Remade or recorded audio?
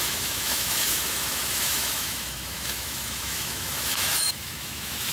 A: remade